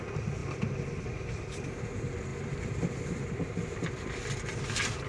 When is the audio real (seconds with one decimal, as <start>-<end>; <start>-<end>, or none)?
0.0-0.4; 1.6-2.3; 2.9-5.1